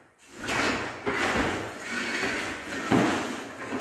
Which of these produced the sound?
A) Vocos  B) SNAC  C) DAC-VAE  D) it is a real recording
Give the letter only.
A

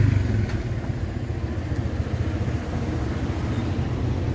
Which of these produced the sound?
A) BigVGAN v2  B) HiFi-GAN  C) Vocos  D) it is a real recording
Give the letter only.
D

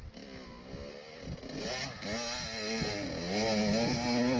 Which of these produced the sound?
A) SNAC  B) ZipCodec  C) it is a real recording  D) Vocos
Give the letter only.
C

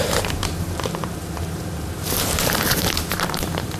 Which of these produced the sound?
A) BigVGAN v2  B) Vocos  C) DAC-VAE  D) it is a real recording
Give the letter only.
A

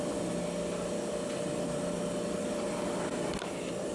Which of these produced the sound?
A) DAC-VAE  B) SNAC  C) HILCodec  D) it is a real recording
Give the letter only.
D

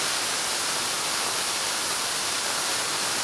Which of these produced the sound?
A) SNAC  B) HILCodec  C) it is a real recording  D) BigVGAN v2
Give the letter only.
C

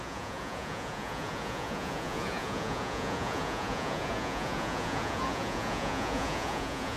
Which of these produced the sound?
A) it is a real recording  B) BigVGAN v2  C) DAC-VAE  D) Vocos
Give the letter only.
D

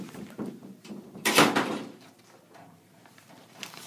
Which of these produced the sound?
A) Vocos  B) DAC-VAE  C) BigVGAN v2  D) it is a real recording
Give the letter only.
C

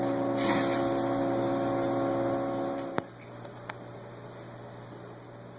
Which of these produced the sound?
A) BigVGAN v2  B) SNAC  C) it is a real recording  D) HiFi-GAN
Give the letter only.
C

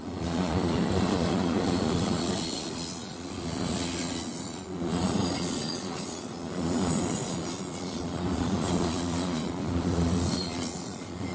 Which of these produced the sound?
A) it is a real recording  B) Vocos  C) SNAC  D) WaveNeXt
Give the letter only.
B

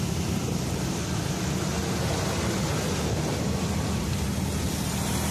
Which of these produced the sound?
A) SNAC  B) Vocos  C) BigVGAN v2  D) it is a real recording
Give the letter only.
D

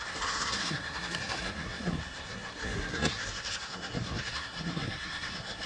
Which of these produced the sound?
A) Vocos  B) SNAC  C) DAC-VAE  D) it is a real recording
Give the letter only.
B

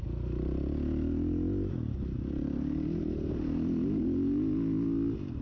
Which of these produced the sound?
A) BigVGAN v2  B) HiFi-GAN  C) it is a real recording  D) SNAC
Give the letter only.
C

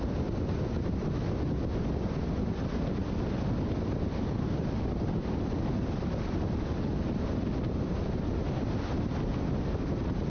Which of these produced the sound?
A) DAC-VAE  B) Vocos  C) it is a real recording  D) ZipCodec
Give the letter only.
C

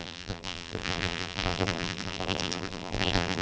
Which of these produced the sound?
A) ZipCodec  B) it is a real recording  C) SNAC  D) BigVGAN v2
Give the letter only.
D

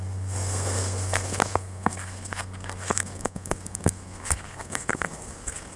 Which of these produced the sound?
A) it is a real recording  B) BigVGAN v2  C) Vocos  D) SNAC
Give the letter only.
D